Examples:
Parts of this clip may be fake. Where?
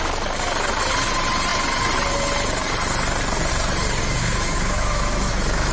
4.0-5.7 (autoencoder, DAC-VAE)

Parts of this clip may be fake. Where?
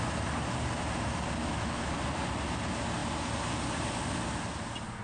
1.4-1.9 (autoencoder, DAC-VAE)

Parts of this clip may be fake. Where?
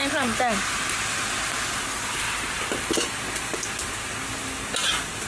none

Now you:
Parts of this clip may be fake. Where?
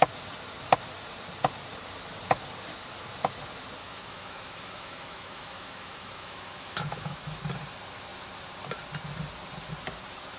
3.8-7.4 (autoencoder, DAC-VAE)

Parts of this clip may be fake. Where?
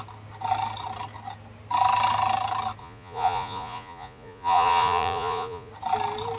2.8-5.7 (vocoder, Vocos)